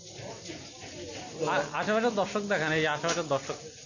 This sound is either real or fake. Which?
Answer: real